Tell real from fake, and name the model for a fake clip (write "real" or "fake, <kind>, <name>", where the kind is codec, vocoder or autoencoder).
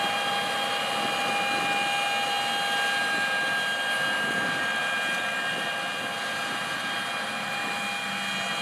real